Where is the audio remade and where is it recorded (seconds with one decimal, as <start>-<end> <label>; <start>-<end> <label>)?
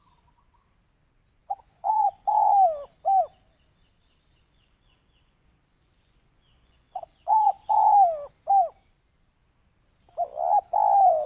0.0-1.4 recorded; 1.4-2.5 remade; 2.5-4.3 recorded; 4.3-7.9 remade; 7.9-11.3 recorded